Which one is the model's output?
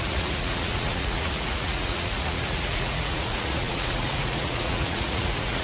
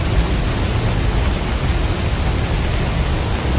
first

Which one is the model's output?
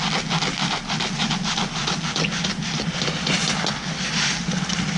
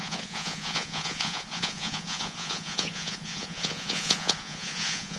second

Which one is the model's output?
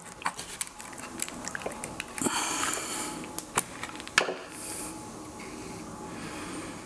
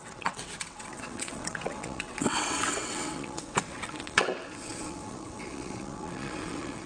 second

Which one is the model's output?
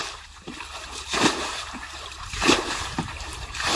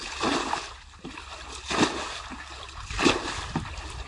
first